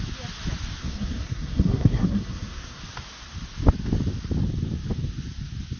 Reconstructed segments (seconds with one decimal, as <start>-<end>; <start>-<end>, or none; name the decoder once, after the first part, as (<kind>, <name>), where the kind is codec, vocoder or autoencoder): 0.8-2.8 (codec, SNAC)